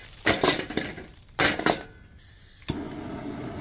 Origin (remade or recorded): recorded